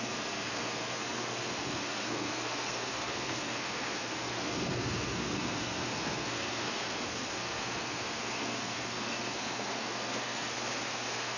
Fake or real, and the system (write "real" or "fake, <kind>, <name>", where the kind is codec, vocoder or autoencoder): fake, codec, SNAC